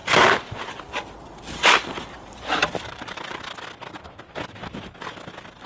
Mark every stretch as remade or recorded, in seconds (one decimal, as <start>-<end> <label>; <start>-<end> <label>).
0.0-3.4 remade; 3.4-5.7 recorded